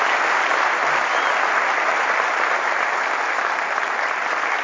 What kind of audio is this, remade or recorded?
recorded